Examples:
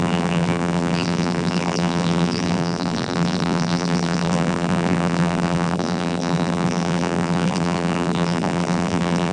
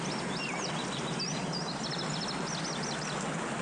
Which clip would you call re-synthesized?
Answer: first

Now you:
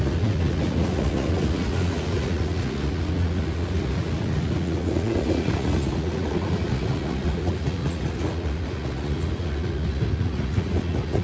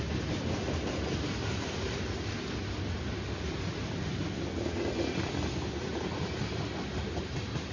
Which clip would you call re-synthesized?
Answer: first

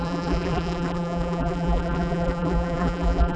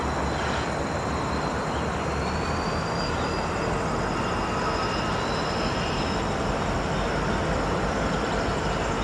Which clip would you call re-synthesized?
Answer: first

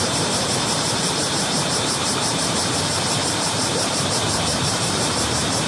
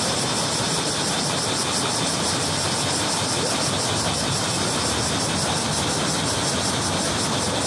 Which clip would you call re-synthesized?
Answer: first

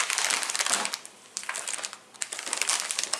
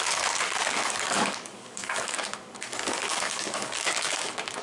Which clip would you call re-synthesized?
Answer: second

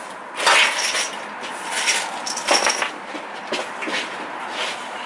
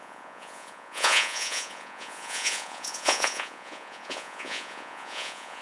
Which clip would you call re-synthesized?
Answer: second